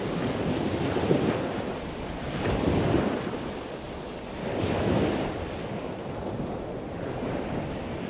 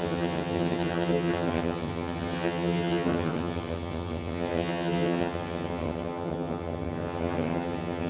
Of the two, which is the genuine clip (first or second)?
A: first